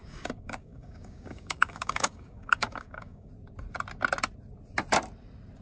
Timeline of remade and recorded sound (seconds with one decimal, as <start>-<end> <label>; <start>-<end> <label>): 0.0-3.3 remade; 3.3-5.6 recorded

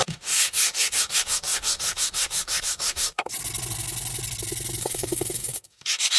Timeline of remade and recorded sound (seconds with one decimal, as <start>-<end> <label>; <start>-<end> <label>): 0.0-3.3 remade; 3.3-4.8 recorded; 4.8-6.2 remade

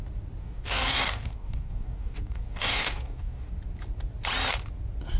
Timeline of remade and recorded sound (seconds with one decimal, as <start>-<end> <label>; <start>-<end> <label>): 0.0-0.4 recorded; 0.4-3.5 remade; 3.5-5.2 recorded

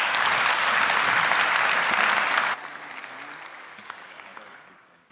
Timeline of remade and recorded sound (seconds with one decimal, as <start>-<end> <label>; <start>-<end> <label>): 0.0-0.5 remade; 0.5-3.6 recorded; 3.6-5.1 remade